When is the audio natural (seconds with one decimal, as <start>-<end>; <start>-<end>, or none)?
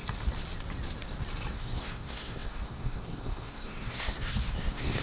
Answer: 0.0-1.5